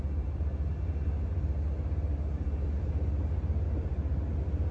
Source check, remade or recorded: recorded